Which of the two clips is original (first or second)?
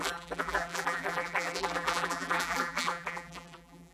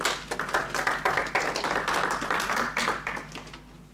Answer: second